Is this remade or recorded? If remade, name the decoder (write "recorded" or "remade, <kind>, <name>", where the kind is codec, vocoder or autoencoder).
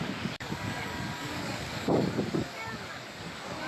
remade, codec, DAC